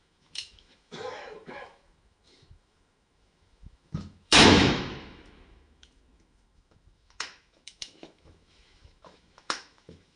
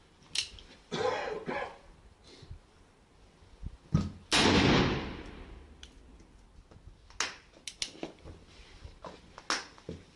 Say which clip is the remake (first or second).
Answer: first